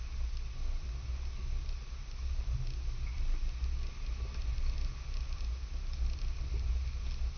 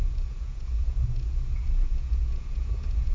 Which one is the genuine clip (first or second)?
first